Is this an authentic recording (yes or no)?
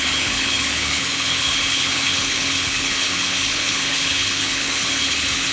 no